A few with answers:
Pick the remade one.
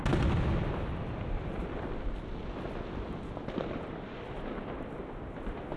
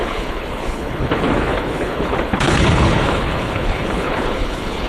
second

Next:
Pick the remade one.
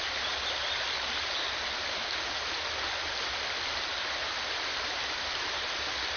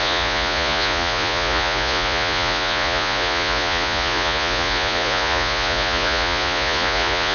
second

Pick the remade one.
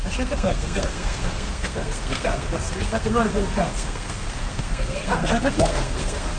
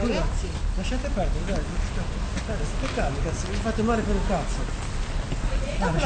first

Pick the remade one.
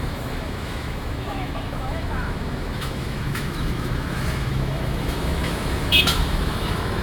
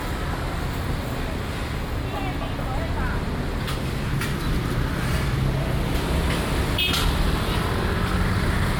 first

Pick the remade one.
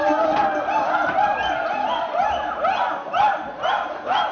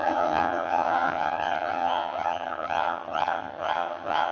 second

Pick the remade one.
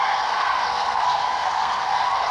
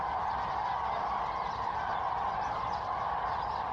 first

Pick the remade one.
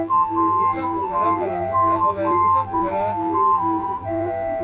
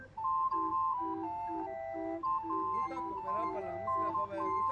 first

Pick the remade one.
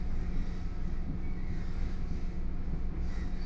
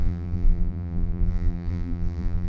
second